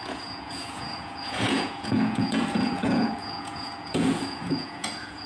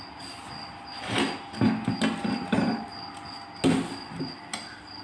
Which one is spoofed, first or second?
first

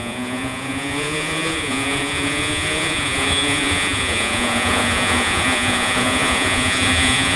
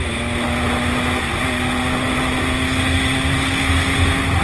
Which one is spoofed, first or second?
first